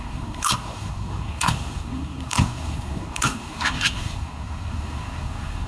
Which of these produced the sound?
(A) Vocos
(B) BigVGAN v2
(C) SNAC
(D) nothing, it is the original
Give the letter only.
C